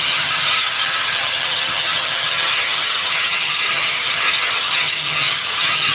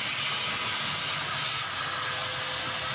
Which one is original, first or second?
second